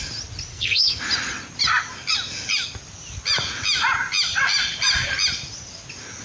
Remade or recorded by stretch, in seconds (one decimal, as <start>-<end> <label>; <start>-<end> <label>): 0.0-0.5 recorded; 0.5-1.0 remade; 1.0-6.2 recorded